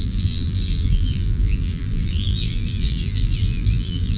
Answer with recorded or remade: remade